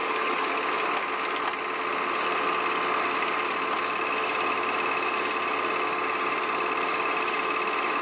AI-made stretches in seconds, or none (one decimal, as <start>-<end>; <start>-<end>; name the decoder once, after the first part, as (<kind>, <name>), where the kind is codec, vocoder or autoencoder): 0.0-0.5 (codec, DAC)